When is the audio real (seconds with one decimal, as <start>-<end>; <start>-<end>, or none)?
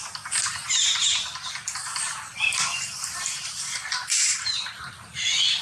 0.0-1.8; 4.9-5.6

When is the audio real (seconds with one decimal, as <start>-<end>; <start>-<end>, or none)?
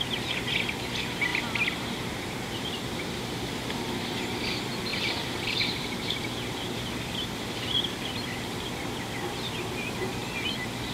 0.0-1.3; 2.4-4.9; 8.5-10.2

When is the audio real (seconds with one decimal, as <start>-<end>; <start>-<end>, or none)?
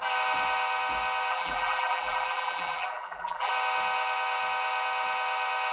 0.0-1.3; 3.5-5.7